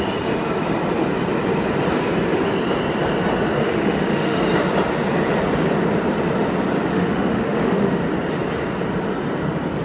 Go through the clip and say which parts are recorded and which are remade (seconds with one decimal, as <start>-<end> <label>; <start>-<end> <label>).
0.0-3.6 recorded; 3.6-4.4 remade; 4.4-6.9 recorded; 6.9-8.0 remade; 8.0-9.8 recorded

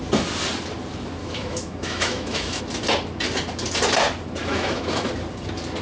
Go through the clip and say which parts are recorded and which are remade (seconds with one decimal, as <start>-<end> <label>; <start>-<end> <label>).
0.0-1.2 recorded; 1.2-2.6 remade; 2.6-4.4 recorded; 4.4-5.1 remade; 5.1-5.8 recorded

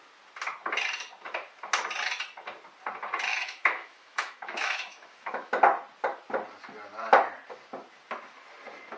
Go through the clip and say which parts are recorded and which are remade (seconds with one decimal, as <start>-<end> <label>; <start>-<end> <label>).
0.0-3.3 recorded; 3.3-5.5 remade; 5.5-9.0 recorded

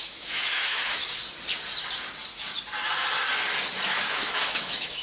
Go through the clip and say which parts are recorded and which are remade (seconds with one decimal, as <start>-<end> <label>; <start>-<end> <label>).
0.0-1.0 remade; 1.0-4.0 recorded; 4.0-5.0 remade

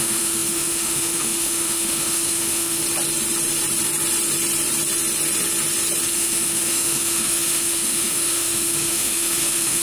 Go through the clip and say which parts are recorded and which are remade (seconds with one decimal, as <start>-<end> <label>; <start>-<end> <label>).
0.0-2.8 remade; 2.8-6.1 recorded; 6.1-9.8 remade

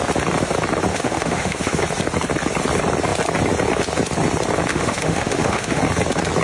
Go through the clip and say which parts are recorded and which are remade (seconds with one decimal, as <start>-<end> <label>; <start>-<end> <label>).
0.0-0.9 recorded; 0.9-1.8 remade; 1.8-4.7 recorded; 4.7-5.8 remade; 5.8-6.4 recorded

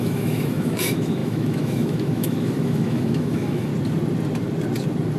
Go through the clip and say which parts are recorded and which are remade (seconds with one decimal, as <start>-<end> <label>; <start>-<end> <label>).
0.0-3.7 remade; 3.7-5.2 recorded

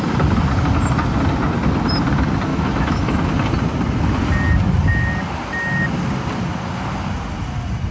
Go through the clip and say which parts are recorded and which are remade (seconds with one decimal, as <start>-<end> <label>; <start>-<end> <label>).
0.0-2.5 recorded; 2.5-3.3 remade; 3.3-7.9 recorded